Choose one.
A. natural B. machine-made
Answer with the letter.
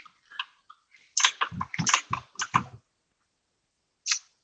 A